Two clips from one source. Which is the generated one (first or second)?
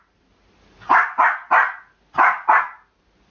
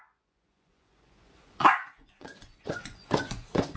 second